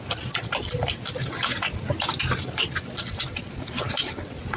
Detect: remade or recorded recorded